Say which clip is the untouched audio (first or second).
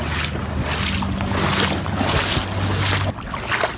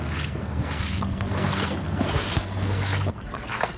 first